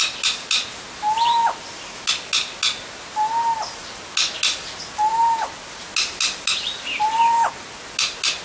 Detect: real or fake real